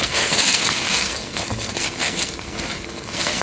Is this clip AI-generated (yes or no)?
yes